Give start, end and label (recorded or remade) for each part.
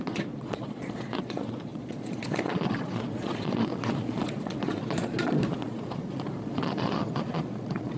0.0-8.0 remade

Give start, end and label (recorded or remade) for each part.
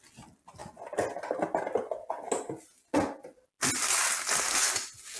0.0-5.2 recorded